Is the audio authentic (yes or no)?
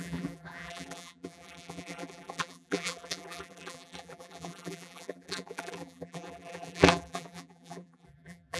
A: no